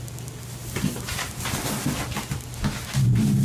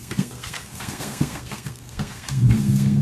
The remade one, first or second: second